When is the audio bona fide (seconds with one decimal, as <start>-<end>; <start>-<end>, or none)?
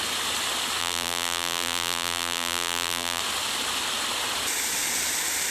0.0-0.8; 3.2-5.5